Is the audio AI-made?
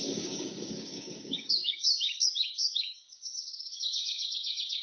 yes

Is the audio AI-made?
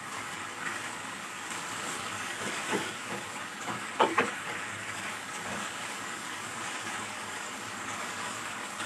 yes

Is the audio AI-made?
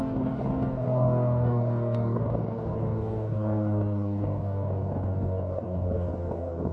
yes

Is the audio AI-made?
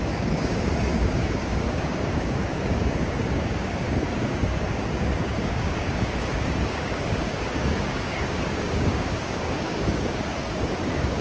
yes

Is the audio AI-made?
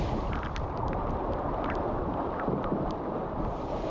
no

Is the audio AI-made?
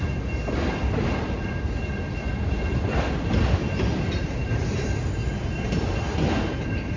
no